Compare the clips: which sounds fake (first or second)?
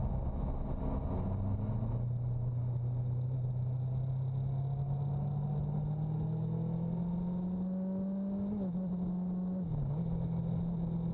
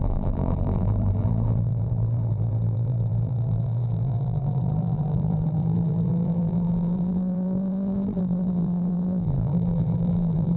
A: second